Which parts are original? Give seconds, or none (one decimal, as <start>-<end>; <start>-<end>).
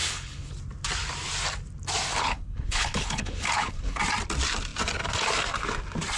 0.5-2.1; 4.0-6.2